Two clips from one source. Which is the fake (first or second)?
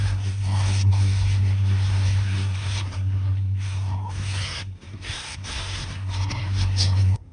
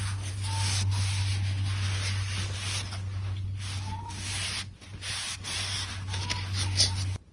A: first